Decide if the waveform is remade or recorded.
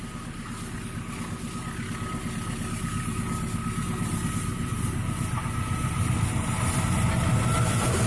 recorded